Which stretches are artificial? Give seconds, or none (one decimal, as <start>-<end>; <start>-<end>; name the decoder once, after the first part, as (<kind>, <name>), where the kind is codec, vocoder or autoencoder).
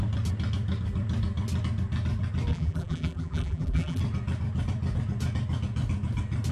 2.5-4.0 (vocoder, BigVGAN v2)